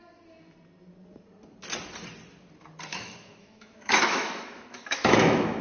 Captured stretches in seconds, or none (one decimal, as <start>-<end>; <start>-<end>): 0.0-2.9

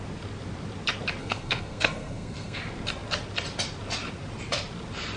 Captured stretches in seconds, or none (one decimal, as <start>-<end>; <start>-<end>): 0.0-1.2; 2.6-5.2

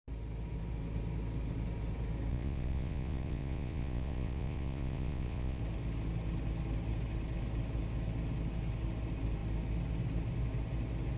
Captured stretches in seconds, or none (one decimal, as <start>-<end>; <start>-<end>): 0.0-2.3; 5.6-11.2

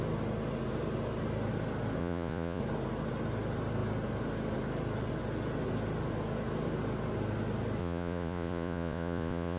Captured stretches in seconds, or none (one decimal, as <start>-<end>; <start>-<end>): 0.0-2.0; 2.6-7.8

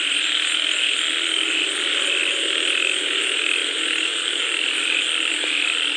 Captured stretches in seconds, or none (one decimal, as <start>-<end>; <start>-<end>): 0.0-6.0

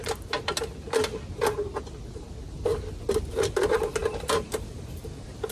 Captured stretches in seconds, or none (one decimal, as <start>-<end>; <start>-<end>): 0.0-3.3

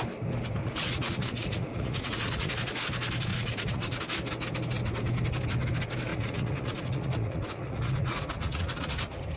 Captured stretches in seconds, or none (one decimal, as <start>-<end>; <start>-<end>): 0.0-0.6; 2.5-3.3; 4.0-6.1; 8.8-9.4

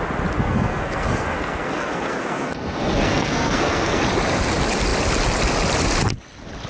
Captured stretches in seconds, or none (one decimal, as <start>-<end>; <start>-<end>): 0.0-0.4; 4.0-6.7